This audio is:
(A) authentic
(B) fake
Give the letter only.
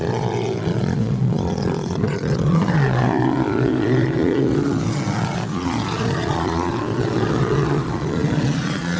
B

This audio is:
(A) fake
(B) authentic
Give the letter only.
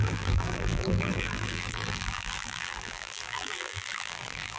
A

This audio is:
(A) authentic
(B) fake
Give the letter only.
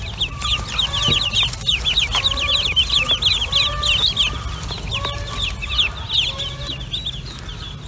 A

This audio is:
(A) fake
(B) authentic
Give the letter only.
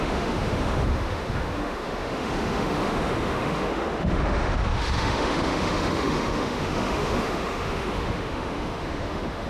A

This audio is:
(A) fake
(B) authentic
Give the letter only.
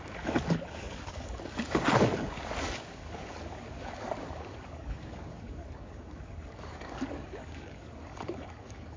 A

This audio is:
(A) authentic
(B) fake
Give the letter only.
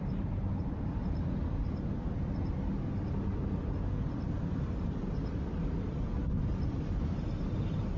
A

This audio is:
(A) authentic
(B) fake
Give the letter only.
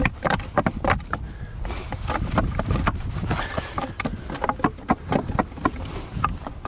A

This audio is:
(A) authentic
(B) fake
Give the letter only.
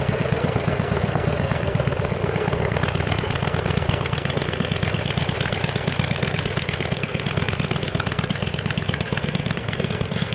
B